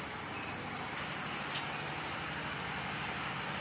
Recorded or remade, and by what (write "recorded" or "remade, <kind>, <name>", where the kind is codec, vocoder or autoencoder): recorded